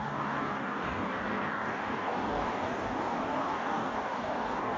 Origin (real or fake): fake